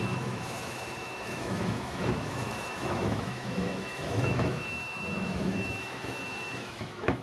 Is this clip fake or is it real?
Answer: fake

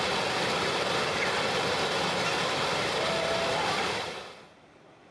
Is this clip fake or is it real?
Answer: real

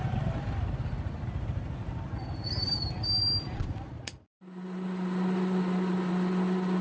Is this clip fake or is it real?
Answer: real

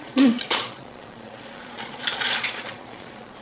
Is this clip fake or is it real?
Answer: fake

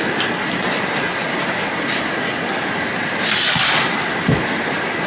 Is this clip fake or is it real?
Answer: real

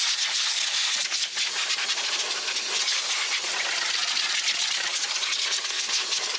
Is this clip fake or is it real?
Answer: real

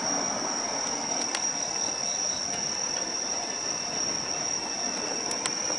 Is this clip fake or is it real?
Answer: real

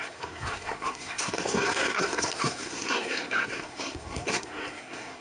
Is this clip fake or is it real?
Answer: fake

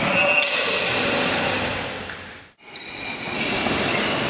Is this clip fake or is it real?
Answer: real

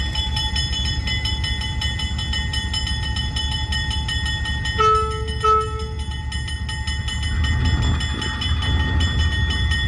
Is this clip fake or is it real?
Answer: real